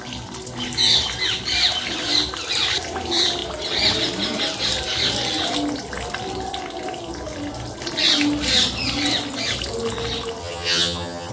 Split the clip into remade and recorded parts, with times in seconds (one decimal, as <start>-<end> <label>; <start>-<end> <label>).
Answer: 0.0-10.4 recorded; 10.4-11.3 remade